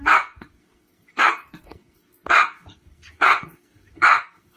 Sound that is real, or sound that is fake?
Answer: fake